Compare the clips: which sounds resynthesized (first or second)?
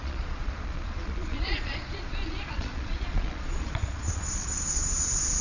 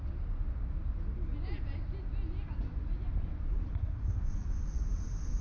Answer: first